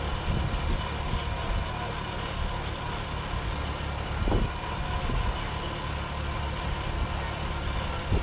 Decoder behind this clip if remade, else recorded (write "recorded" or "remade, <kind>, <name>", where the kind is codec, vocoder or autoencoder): recorded